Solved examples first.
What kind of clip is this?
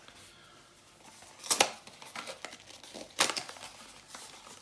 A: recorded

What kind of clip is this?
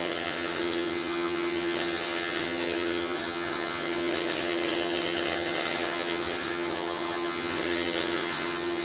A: remade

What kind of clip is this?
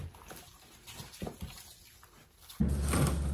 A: recorded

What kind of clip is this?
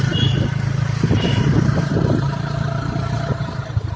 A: recorded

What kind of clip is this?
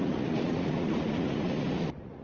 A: remade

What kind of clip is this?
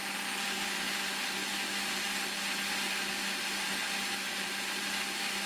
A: recorded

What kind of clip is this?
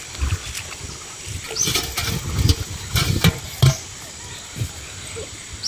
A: recorded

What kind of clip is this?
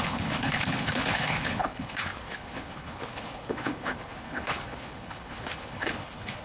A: remade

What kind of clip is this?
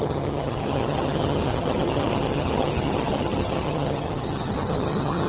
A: remade